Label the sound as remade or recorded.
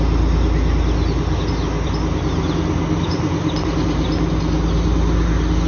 recorded